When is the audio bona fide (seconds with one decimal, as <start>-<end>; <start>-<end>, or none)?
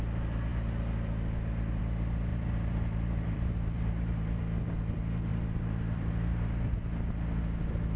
0.0-2.3; 4.4-5.3; 6.4-8.0